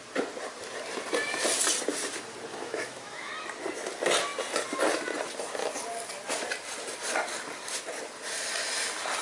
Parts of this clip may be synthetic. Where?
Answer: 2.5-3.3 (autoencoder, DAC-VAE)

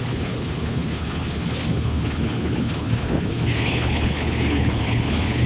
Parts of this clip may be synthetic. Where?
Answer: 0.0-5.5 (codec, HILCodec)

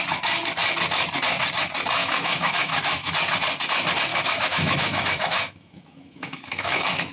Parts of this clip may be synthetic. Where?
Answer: 2.0-3.1 (autoencoder, DAC-VAE); 4.1-7.1